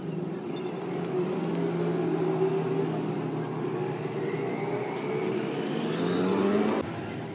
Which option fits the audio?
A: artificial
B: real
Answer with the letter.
B